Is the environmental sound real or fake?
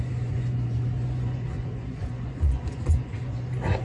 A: fake